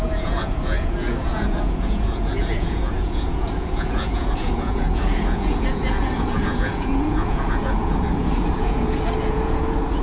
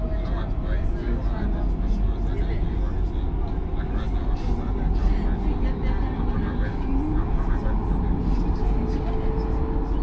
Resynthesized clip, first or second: first